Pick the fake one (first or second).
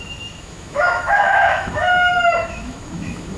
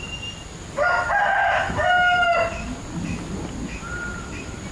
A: first